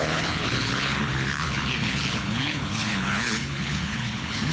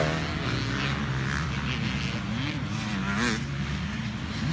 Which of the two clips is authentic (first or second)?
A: second